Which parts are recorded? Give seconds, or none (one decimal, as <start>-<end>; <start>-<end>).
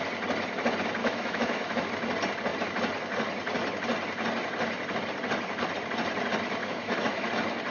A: 0.0-1.0; 1.9-6.6; 7.3-7.7